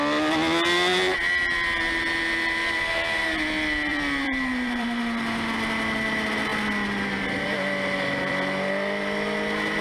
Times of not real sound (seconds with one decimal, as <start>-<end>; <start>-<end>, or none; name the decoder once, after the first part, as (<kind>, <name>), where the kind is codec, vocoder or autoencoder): 3.9-5.0 (vocoder, BigVGAN v2)